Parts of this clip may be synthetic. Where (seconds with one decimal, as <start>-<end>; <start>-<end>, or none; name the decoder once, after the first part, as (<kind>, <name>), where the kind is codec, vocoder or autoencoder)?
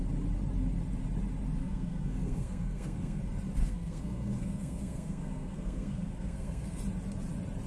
1.6-3.2 (codec, SNAC); 3.6-6.8